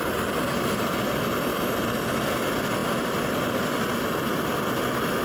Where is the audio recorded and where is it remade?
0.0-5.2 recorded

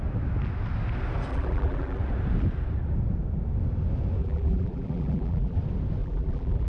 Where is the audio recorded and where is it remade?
0.0-1.3 recorded; 1.3-2.0 remade; 2.0-4.2 recorded; 4.2-5.6 remade; 5.6-6.0 recorded; 6.0-6.7 remade

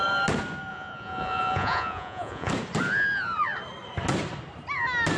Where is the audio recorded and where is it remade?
0.0-0.7 recorded; 0.7-2.5 remade; 2.5-5.2 recorded

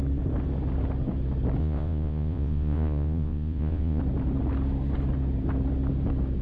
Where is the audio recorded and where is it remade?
0.0-1.6 recorded; 1.6-4.0 remade; 4.0-6.4 recorded

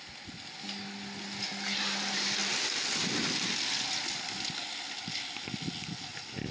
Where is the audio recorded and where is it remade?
0.0-6.5 recorded

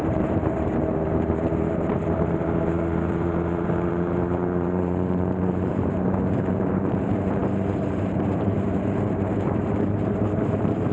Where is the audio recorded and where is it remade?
0.0-10.9 remade

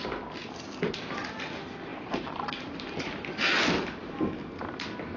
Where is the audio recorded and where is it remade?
0.0-1.9 recorded; 1.9-3.5 remade; 3.5-5.2 recorded

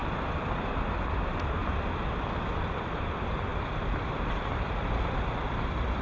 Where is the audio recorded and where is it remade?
0.0-0.7 recorded; 0.7-1.6 remade; 1.6-2.6 recorded; 2.6-6.0 remade